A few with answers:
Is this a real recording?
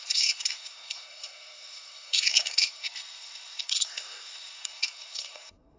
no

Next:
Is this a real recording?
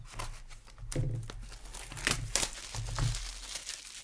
yes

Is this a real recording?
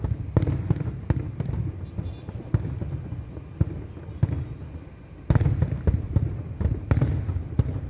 yes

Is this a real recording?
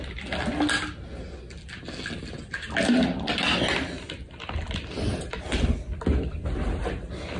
yes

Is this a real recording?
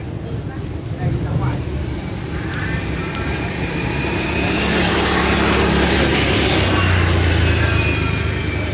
yes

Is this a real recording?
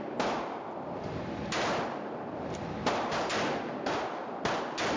yes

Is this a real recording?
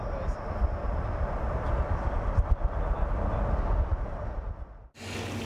yes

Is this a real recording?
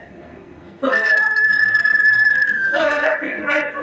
no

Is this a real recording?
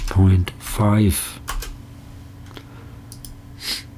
yes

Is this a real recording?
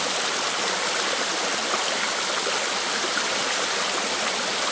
yes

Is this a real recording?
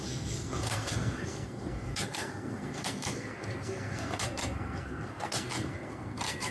no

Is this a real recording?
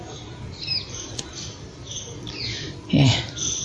yes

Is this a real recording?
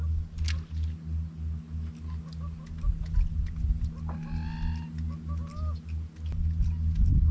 yes